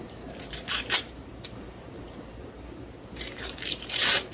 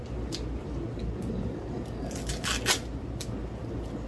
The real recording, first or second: second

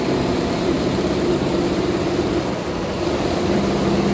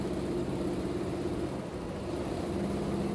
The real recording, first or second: second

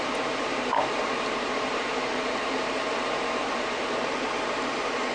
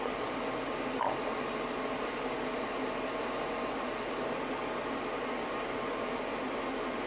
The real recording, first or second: second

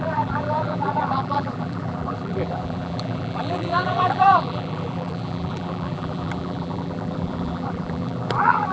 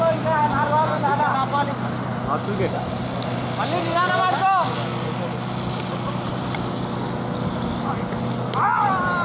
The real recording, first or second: second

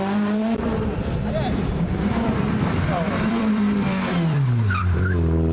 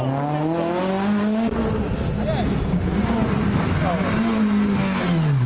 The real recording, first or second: second